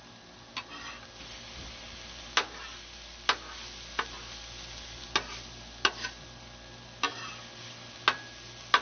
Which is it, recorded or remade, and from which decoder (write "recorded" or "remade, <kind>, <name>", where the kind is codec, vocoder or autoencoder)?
recorded